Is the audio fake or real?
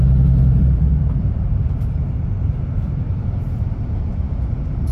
fake